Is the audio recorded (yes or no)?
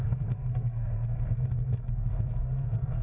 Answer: no